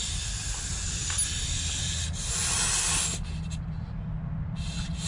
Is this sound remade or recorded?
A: recorded